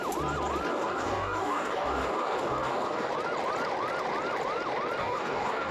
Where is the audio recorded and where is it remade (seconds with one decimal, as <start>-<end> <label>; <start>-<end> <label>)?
0.0-0.7 recorded; 0.7-3.1 remade; 3.1-5.0 recorded; 5.0-5.7 remade